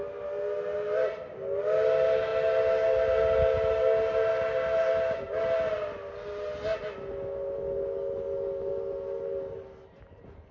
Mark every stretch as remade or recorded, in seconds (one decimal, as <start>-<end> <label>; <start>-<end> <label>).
0.0-10.5 recorded